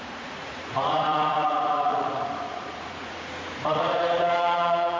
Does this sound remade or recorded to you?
remade